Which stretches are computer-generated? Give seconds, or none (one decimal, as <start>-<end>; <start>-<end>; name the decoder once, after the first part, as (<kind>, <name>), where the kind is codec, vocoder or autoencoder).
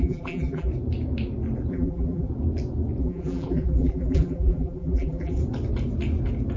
0.0-0.7 (vocoder, BigVGAN v2); 1.7-2.3; 3.0-5.4